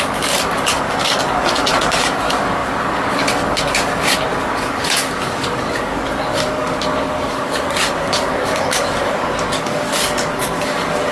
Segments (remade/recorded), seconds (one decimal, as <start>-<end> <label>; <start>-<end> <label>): 0.0-11.1 remade